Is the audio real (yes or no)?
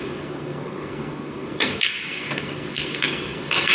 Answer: no